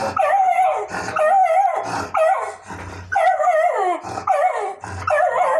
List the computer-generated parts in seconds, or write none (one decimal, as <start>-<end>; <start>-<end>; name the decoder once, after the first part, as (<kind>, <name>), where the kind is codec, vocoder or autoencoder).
none